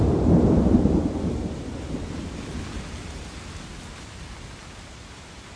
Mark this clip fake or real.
real